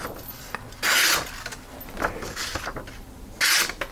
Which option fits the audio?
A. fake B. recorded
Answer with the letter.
B